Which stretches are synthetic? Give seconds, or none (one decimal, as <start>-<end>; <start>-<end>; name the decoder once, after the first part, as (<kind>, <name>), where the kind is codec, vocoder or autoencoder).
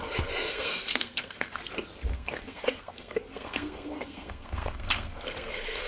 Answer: 0.5-1.6 (codec, SNAC); 2.1-5.9